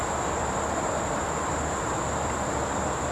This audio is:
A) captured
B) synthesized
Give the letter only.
A